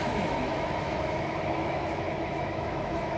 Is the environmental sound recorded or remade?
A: remade